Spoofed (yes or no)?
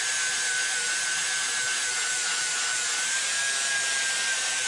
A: no